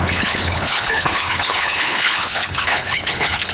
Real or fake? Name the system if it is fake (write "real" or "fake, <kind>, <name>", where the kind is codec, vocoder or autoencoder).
fake, codec, HILCodec